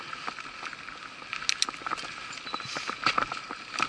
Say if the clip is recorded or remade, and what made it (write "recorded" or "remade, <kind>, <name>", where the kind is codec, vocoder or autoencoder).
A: recorded